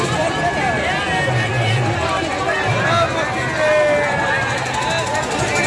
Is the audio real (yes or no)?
yes